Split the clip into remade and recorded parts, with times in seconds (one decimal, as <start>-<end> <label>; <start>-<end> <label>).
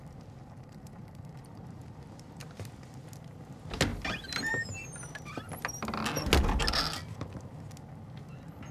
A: 0.0-0.4 recorded; 0.4-2.4 remade; 2.4-8.7 recorded